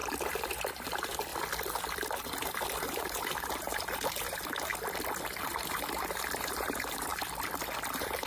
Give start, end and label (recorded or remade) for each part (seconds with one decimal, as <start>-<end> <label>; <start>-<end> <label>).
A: 0.0-0.7 recorded; 0.7-1.3 remade; 1.3-2.8 recorded; 2.8-4.7 remade; 4.7-5.4 recorded; 5.4-7.1 remade; 7.1-7.9 recorded; 7.9-8.3 remade